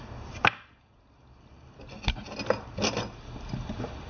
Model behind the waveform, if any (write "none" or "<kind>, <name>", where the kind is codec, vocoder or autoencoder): none